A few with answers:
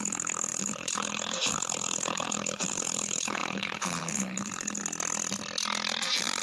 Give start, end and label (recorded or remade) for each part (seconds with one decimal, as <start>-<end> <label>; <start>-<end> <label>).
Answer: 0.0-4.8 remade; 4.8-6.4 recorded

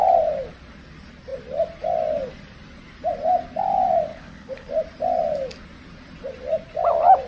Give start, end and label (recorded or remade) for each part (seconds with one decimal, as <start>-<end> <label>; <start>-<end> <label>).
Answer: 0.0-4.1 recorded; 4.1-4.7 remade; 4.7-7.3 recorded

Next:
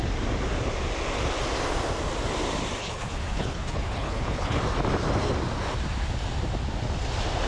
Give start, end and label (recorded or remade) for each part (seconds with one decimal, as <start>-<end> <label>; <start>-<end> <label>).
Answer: 0.0-2.8 recorded; 2.8-4.6 remade; 4.6-7.5 recorded